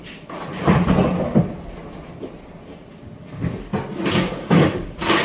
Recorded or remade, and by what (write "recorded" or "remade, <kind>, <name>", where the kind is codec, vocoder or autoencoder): recorded